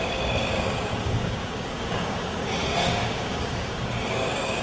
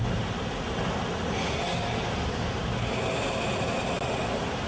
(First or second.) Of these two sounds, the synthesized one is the first